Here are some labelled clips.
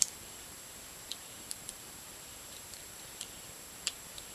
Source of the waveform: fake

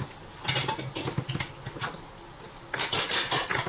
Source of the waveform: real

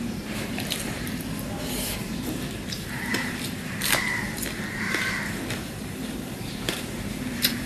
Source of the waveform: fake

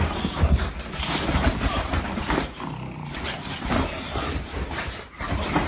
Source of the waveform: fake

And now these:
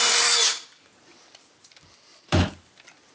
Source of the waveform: fake